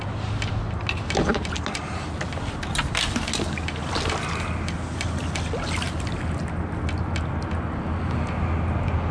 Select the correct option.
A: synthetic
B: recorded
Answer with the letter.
B